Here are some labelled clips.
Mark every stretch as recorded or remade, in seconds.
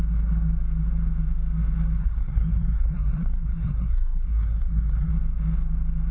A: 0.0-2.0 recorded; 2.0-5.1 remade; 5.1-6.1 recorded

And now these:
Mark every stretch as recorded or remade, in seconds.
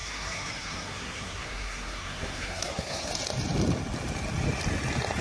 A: 0.0-3.1 remade; 3.1-5.2 recorded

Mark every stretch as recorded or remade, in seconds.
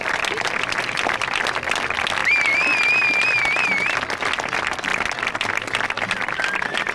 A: 0.0-6.9 recorded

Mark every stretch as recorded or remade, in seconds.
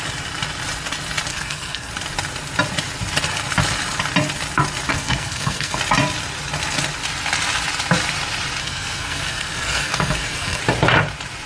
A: 0.0-1.3 recorded; 1.3-1.9 remade; 1.9-4.9 recorded; 4.9-5.8 remade; 5.8-8.6 recorded; 8.6-10.6 remade; 10.6-11.5 recorded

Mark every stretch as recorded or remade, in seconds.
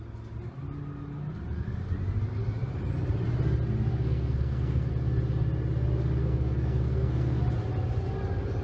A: 0.0-3.9 recorded; 3.9-4.9 remade; 4.9-6.2 recorded; 6.2-7.4 remade; 7.4-8.6 recorded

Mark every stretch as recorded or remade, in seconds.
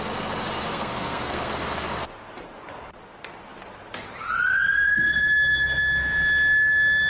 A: 0.0-0.7 recorded; 0.7-1.5 remade; 1.5-7.1 recorded